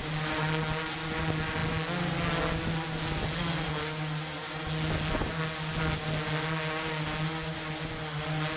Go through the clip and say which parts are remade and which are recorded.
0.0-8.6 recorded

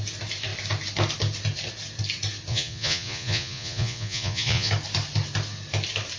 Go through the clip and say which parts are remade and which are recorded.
0.0-2.5 recorded; 2.5-4.7 remade; 4.7-6.2 recorded

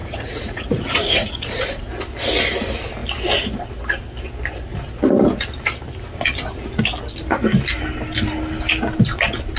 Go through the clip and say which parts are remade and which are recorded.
0.0-1.9 remade; 1.9-9.6 recorded